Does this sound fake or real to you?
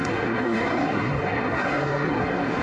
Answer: fake